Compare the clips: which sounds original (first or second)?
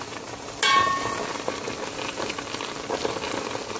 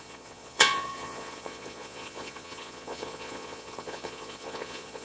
first